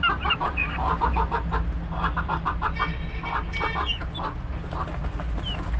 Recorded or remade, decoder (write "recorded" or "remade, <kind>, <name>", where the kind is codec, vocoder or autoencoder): recorded